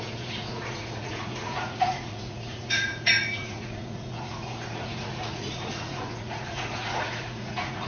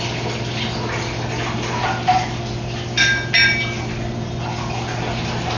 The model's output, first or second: first